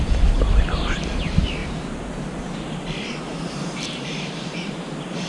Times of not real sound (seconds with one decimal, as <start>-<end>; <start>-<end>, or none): 1.6-4.8